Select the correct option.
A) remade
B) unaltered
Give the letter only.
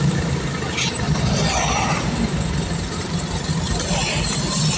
B